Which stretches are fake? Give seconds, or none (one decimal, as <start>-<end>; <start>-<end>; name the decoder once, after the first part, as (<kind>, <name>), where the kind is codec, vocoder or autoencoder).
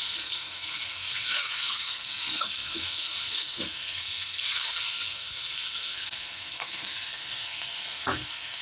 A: 0.0-8.6 (codec, SNAC)